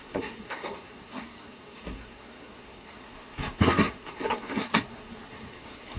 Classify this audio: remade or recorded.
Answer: remade